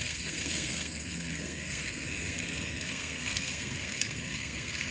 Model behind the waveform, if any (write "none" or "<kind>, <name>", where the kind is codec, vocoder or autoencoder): codec, SNAC